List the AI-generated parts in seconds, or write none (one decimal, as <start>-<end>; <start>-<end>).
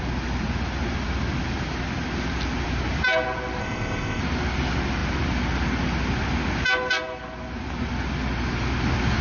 3.6-4.2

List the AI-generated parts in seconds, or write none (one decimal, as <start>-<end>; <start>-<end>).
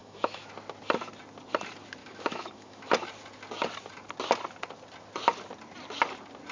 0.0-0.5; 2.0-2.9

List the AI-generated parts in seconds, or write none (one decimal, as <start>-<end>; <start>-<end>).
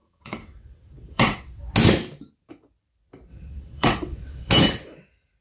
0.0-1.6; 3.3-4.5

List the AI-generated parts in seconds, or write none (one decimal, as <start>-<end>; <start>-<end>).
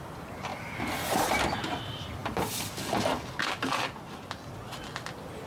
none